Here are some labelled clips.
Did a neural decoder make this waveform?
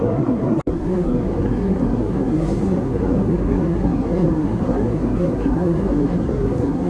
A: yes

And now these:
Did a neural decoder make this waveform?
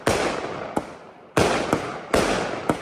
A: no